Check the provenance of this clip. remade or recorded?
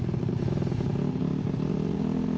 recorded